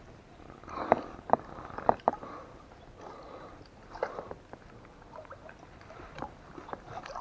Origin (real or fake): real